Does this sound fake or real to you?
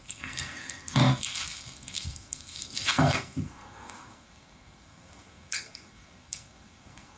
fake